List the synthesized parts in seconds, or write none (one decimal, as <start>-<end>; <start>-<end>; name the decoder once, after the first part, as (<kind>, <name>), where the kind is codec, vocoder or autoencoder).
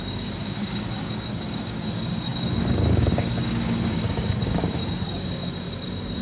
0.0-6.2 (codec, DAC)